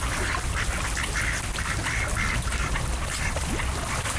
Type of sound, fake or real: real